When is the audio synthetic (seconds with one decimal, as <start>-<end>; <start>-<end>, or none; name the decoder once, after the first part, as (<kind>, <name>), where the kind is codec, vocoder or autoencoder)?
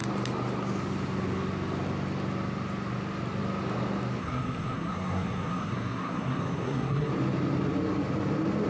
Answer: 4.2-7.1 (codec, SNAC)